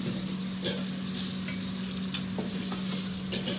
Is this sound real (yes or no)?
yes